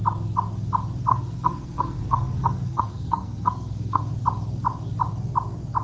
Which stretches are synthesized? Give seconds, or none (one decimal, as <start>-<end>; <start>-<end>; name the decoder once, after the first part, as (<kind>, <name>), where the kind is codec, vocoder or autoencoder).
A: 1.1-4.0 (codec, SNAC)